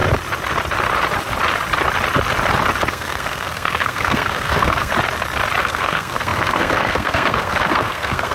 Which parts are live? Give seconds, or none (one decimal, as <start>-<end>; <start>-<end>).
0.0-2.9; 4.9-5.6